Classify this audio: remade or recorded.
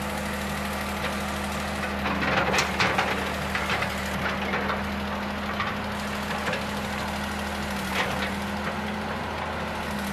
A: recorded